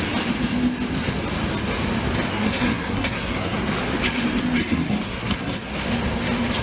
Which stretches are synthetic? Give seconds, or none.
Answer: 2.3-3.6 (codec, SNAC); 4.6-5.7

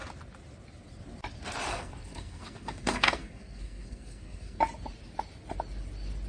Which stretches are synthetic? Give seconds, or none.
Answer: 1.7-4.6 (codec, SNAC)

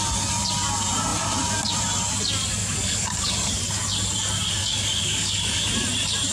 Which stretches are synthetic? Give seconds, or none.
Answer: 2.6-3.5 (codec, DAC); 4.6-5.7

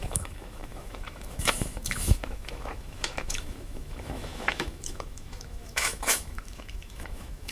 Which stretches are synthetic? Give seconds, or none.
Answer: 0.0-7.5 (autoencoder, DAC-VAE)

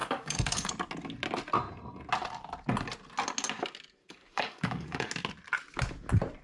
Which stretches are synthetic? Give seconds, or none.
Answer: 0.0-0.7 (codec, DAC); 4.0-5.1

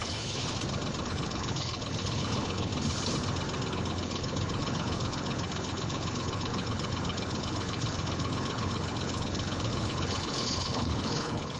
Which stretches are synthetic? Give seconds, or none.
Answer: 0.0-0.4 (codec, HILCodec); 1.0-2.7; 3.7-11.6